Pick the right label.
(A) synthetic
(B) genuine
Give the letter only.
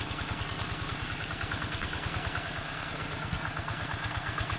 A